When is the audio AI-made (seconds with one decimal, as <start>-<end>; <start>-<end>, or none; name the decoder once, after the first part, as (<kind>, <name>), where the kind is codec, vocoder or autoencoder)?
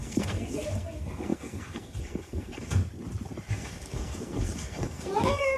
0.0-2.8 (codec, SNAC); 3.5-5.6